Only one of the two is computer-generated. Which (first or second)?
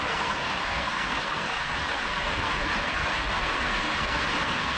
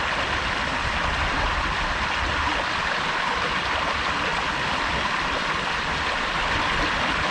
first